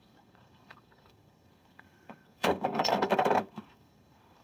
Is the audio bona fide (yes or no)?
no